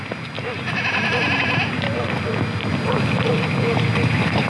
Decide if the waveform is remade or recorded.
recorded